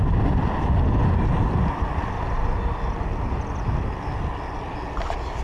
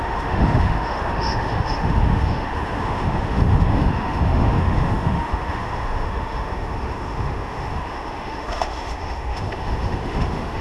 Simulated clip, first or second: second